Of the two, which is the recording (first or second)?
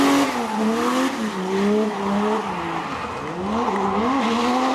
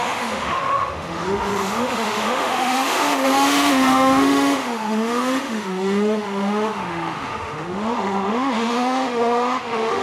first